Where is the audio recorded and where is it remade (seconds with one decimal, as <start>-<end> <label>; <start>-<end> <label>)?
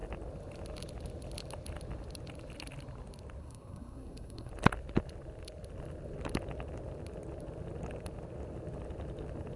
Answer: 0.0-3.4 recorded; 3.4-4.5 remade; 4.5-9.6 recorded